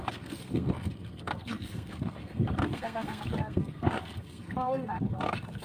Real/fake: fake